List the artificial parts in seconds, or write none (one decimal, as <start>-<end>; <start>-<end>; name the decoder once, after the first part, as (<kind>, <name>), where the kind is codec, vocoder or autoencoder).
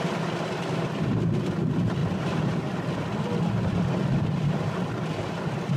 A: 2.0-5.3 (vocoder, BigVGAN v2)